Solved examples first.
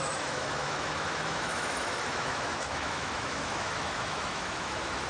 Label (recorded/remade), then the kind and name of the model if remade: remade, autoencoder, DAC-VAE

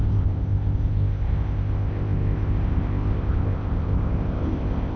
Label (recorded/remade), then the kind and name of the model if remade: remade, codec, ZipCodec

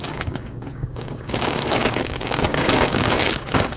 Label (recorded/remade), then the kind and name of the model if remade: remade, codec, DAC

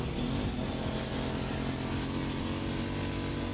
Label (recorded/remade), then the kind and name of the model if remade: recorded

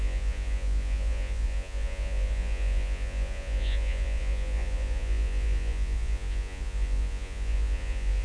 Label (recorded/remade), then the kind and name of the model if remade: remade, vocoder, Vocos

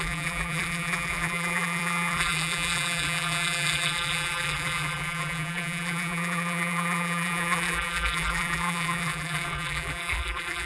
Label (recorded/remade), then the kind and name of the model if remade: remade, vocoder, BigVGAN v2